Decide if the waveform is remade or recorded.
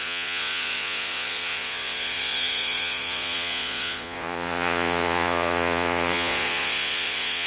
remade